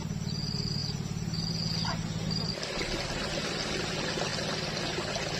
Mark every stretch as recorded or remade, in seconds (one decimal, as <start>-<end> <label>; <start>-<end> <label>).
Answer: 0.0-5.4 recorded